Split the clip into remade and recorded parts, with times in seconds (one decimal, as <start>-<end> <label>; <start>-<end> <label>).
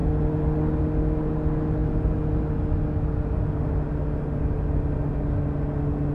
0.0-6.1 recorded